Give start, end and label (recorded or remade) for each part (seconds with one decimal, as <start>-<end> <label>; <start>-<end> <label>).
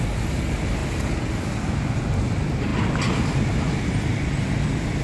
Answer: 0.0-5.0 recorded